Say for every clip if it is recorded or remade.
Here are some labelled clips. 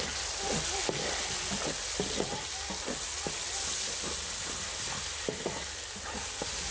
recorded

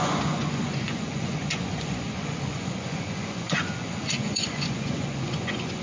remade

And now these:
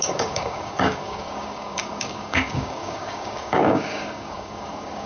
remade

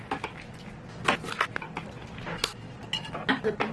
recorded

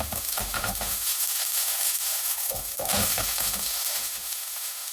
remade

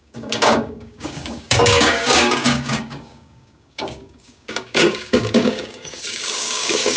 remade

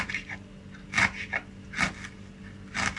recorded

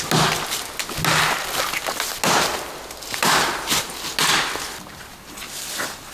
recorded